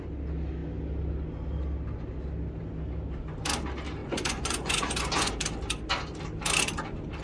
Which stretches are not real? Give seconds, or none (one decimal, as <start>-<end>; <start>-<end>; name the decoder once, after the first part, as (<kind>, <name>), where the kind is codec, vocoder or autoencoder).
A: 4.0-5.3 (vocoder, Vocos)